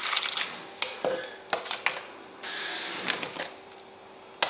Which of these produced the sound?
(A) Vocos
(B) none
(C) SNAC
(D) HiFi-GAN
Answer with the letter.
B